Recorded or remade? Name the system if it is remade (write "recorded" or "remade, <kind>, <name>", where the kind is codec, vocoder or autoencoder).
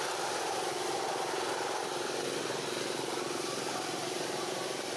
recorded